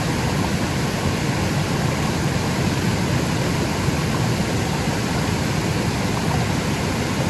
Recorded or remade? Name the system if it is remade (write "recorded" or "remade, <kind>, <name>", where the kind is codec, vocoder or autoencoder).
recorded